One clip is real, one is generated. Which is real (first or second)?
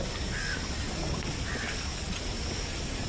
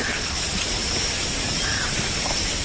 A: first